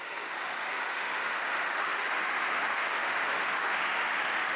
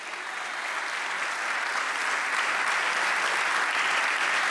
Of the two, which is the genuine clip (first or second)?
second